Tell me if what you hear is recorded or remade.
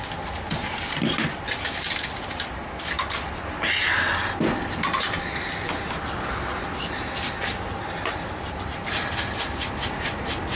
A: recorded